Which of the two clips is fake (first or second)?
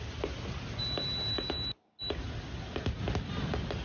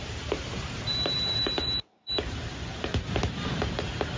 second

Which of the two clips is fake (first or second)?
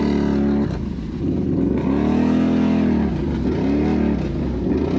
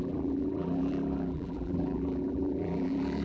second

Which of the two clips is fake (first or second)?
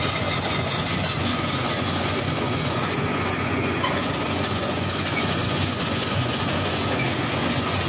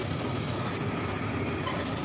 first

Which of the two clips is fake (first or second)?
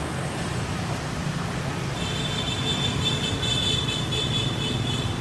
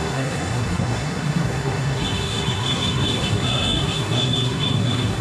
second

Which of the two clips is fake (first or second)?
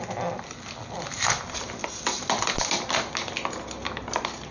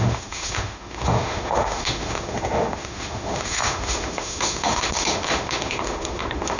second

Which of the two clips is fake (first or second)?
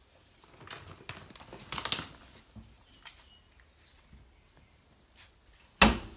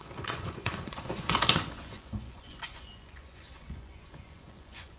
second